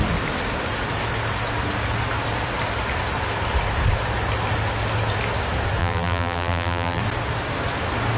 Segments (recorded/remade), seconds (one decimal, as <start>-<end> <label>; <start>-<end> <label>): 0.0-5.8 recorded; 5.8-7.0 remade; 7.0-8.2 recorded